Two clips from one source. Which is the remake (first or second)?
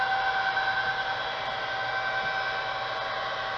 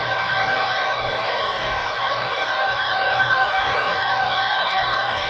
second